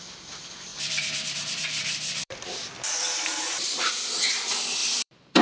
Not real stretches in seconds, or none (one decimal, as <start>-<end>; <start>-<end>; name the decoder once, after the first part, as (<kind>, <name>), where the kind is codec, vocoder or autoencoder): 0.7-3.9 (vocoder, BigVGAN v2); 4.8-5.4